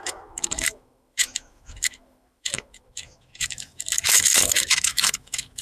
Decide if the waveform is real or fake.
fake